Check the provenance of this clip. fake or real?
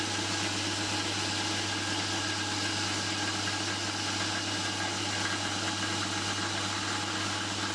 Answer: real